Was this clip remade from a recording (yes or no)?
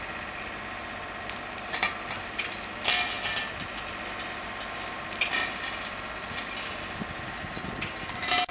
no